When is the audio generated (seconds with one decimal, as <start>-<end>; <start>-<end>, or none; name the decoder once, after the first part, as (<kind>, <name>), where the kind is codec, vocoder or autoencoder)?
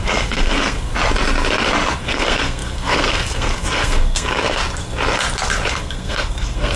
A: 0.0-0.9 (codec, SNAC); 2.0-4.6; 5.7-6.8